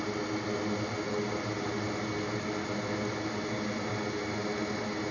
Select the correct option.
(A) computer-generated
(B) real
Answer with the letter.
B